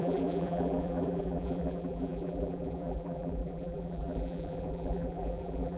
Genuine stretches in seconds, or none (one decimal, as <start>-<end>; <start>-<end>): none

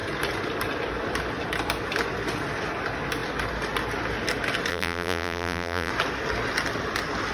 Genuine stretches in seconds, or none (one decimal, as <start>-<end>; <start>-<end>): 0.0-4.7; 5.9-7.3

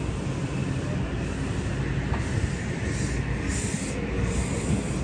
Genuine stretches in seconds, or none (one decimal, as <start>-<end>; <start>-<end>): 0.0-5.0

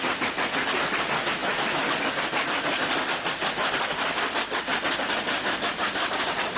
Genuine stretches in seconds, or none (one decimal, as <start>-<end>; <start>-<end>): 0.0-1.4; 2.1-6.6

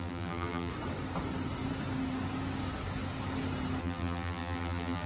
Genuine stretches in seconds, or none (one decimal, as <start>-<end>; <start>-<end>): 0.7-3.8